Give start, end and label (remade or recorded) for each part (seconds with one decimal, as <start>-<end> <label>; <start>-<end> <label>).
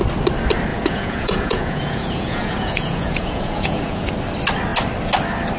0.0-0.7 recorded; 0.7-4.1 remade; 4.1-5.6 recorded